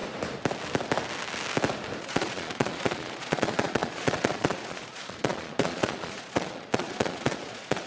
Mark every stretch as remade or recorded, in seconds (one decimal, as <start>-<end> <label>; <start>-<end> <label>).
0.0-2.0 recorded; 2.0-7.9 remade